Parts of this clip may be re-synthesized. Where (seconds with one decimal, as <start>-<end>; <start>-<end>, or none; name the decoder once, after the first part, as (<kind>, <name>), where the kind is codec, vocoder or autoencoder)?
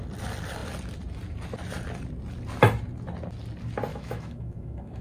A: 3.9-5.0 (autoencoder, DAC-VAE)